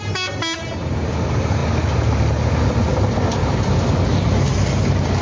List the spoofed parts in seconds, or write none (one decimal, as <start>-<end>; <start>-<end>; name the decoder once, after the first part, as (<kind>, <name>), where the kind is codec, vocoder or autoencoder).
none